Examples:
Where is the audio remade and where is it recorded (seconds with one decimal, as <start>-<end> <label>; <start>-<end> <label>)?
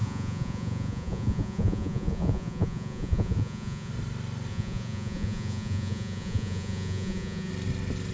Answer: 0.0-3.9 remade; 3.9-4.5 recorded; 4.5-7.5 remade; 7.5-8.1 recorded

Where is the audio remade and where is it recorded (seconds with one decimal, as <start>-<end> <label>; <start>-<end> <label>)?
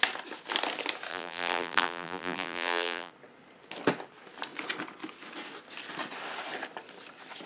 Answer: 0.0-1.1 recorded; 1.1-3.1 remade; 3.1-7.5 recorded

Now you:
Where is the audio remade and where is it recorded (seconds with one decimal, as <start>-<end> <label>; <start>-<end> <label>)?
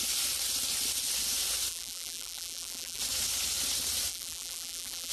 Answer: 0.0-1.7 recorded; 1.7-3.0 remade; 3.0-4.1 recorded; 4.1-5.1 remade